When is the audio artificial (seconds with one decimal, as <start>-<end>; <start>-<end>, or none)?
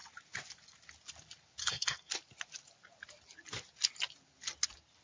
1.6-2.1